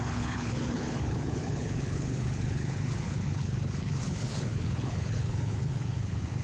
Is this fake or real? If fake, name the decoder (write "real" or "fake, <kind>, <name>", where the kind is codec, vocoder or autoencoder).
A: fake, codec, HILCodec